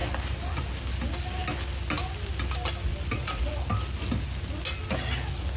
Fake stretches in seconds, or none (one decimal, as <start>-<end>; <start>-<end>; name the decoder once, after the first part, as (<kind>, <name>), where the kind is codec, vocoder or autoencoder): none